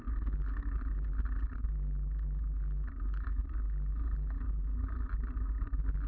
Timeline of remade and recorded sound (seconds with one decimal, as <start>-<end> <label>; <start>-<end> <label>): 0.0-6.1 recorded